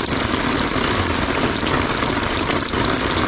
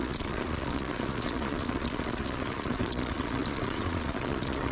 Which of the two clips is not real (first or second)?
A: second